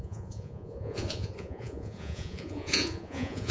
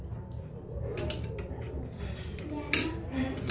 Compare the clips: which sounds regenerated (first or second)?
first